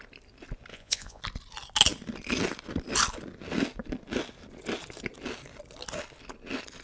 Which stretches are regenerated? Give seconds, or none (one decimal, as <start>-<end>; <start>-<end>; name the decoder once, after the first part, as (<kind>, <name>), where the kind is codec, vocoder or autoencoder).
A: 0.7-1.2 (vocoder, Vocos)